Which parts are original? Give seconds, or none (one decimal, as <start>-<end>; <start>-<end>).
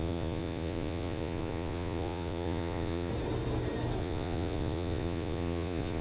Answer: 3.1-4.0